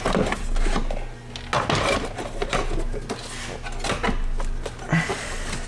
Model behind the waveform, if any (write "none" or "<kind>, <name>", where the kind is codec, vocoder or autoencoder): none